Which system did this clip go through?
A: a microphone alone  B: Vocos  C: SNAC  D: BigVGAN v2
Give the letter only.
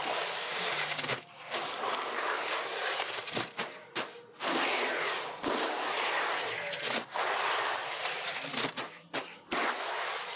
A